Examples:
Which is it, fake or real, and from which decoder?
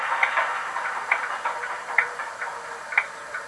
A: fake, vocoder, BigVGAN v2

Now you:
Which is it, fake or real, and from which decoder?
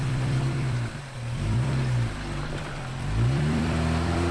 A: fake, vocoder, BigVGAN v2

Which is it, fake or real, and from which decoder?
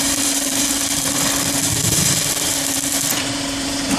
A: fake, vocoder, BigVGAN v2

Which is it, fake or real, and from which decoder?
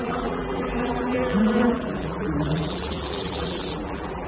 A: fake, vocoder, BigVGAN v2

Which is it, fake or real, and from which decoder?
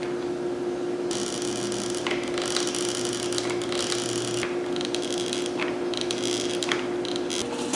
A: real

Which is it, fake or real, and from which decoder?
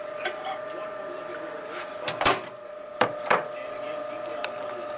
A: fake, vocoder, BigVGAN v2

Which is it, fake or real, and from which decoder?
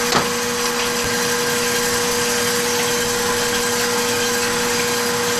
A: real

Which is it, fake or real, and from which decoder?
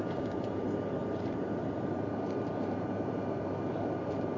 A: fake, vocoder, BigVGAN v2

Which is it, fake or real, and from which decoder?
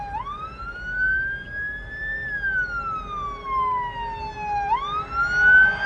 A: real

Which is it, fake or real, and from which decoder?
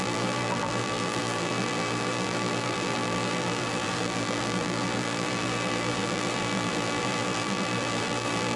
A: fake, vocoder, BigVGAN v2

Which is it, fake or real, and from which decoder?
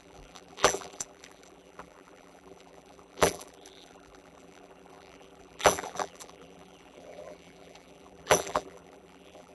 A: fake, vocoder, BigVGAN v2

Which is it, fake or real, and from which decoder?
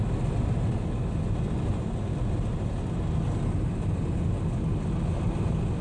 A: real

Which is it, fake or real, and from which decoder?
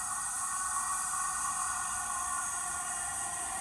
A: real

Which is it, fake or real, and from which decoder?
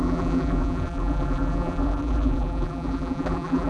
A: fake, vocoder, BigVGAN v2